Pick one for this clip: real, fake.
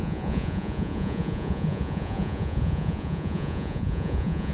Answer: fake